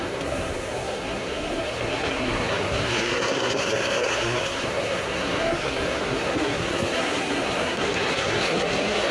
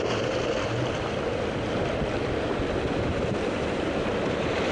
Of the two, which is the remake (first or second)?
first